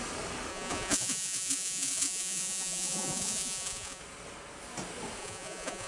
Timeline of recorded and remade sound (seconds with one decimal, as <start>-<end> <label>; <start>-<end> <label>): 0.0-0.5 recorded; 0.5-4.0 remade; 4.0-5.2 recorded; 5.2-5.9 remade